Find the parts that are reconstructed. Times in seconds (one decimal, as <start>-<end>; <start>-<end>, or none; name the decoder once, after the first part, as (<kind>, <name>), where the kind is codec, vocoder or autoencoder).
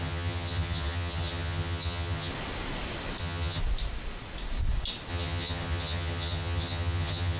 0.0-2.3 (vocoder, HiFi-GAN); 3.2-3.6; 5.1-7.4